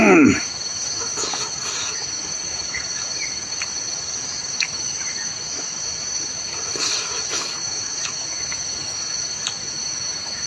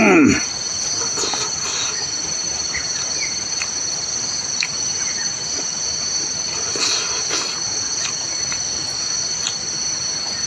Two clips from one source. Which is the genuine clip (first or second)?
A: second